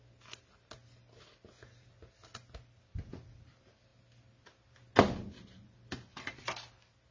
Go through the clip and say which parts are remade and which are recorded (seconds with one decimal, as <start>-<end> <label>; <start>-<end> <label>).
0.0-7.1 recorded